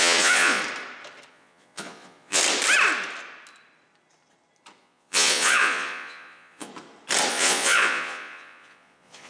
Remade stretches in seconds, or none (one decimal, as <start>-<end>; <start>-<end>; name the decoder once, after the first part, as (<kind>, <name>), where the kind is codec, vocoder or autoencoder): 0.0-0.6 (vocoder, Vocos); 1.3-2.4; 4.8-6.7; 7.3-9.3